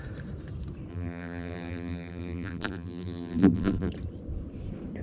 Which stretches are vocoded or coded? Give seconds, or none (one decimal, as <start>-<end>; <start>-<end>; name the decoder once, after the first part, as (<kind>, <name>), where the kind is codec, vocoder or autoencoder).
0.9-3.9 (vocoder, BigVGAN v2)